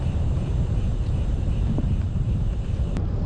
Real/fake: fake